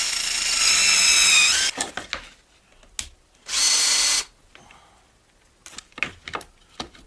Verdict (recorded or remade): recorded